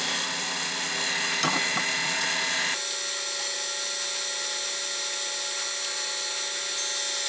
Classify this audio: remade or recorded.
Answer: recorded